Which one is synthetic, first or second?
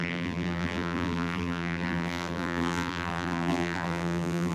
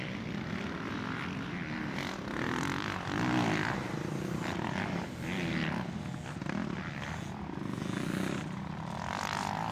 first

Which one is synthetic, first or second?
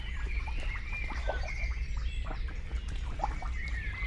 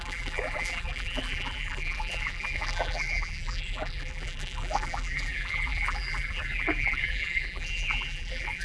second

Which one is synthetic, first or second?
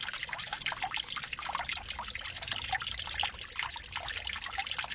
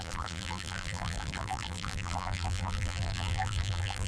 second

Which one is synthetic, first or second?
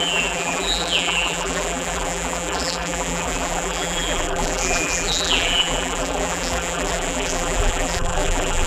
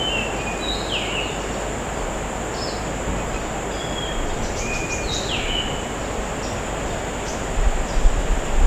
first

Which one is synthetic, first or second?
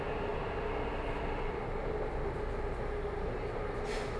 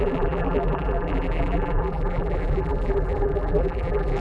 second